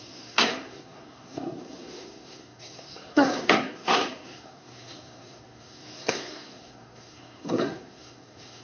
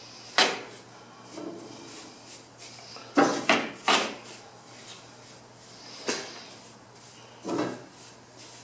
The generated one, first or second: first